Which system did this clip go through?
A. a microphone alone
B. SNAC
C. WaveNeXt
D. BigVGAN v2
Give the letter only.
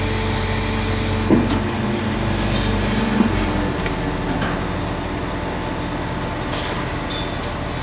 A